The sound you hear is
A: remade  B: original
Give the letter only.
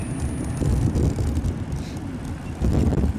B